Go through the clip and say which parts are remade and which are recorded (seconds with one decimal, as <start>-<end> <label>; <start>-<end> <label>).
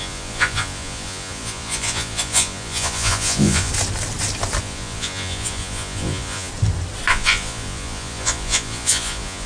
0.0-3.7 remade; 3.7-4.6 recorded; 4.6-6.5 remade; 6.5-7.1 recorded; 7.1-9.5 remade